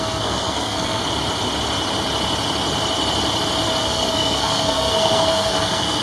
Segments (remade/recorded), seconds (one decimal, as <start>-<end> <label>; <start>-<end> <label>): 0.0-1.0 remade; 1.0-3.8 recorded; 3.8-6.0 remade